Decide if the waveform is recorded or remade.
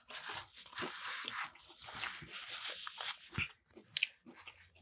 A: recorded